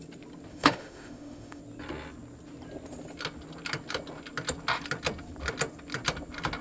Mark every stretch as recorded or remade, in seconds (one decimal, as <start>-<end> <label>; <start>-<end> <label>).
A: 0.0-0.5 recorded; 0.5-1.6 remade; 1.6-6.6 recorded